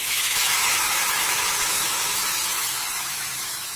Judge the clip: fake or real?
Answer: fake